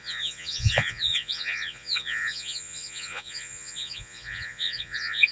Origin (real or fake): fake